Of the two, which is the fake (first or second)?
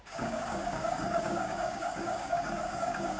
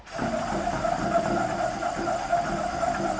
first